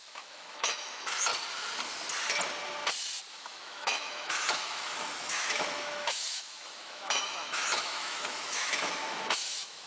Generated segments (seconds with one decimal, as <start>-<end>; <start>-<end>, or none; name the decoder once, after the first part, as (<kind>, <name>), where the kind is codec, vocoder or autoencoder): 0.0-1.3 (autoencoder, DAC-VAE); 3.3-9.9